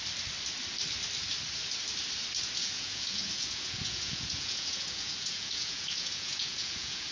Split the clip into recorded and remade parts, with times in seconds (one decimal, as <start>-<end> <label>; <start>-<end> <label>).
0.0-2.6 recorded; 2.6-7.1 remade

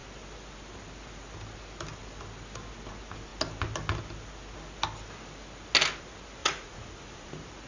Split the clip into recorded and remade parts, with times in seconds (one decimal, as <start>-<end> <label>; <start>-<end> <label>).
0.0-6.4 recorded; 6.4-7.3 remade; 7.3-7.7 recorded

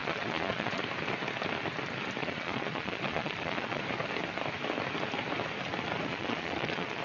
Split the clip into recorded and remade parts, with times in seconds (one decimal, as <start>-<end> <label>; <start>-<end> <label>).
0.0-0.8 remade; 0.8-2.2 recorded; 2.2-3.8 remade; 3.8-6.1 recorded; 6.1-7.0 remade

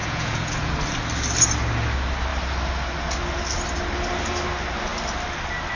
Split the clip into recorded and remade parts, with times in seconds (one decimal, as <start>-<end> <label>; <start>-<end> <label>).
0.0-0.7 remade; 0.7-5.8 recorded